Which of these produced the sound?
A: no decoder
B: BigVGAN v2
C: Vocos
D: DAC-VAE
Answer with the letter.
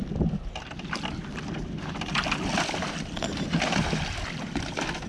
A